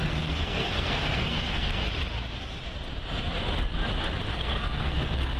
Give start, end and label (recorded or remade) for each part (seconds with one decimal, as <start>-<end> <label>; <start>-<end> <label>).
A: 0.0-1.8 remade; 1.8-4.3 recorded; 4.3-5.4 remade

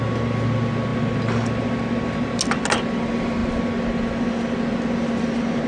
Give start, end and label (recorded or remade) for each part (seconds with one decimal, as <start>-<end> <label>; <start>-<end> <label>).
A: 0.0-5.7 recorded

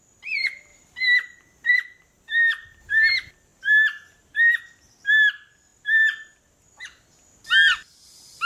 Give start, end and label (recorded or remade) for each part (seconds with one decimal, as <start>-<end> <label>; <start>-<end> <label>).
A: 0.0-8.5 recorded